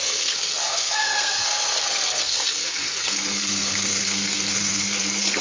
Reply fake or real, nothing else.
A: fake